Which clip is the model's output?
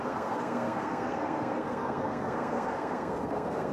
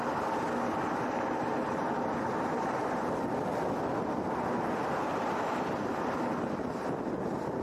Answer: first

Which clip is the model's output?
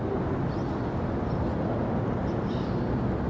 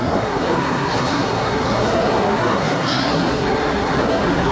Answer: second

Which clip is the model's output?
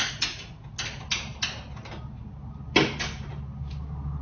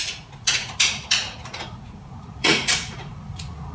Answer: second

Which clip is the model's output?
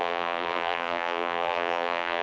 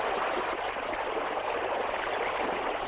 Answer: first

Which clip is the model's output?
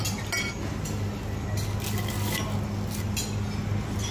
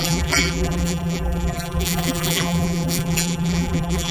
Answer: second